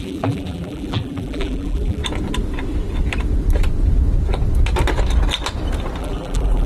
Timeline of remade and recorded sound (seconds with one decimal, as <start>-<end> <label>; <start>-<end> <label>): 0.0-2.0 remade; 2.0-6.0 recorded; 6.0-6.7 remade